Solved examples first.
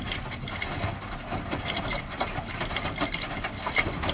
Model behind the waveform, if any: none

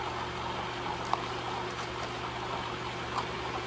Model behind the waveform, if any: none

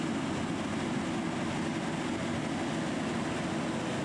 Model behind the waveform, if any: none